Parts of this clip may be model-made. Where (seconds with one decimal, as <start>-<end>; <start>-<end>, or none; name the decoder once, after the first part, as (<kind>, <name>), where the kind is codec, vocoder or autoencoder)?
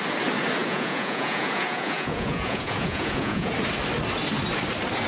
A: 0.6-3.5 (vocoder, Vocos)